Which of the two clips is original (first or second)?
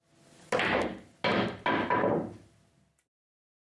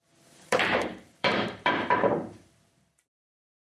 first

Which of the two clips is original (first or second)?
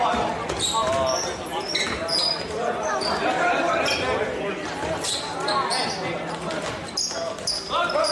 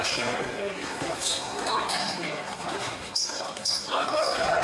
first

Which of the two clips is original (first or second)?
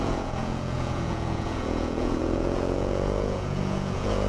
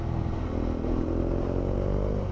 second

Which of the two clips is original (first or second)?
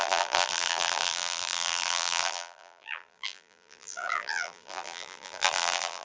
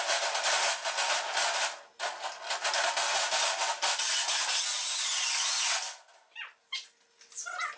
second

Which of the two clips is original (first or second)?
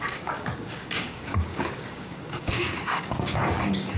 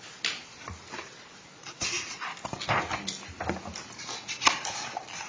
second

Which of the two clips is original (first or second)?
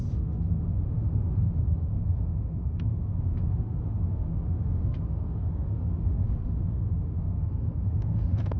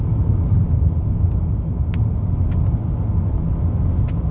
second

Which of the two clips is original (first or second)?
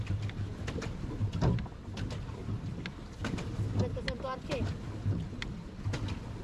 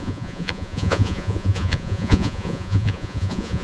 first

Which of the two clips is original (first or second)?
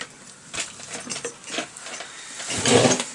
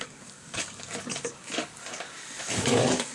first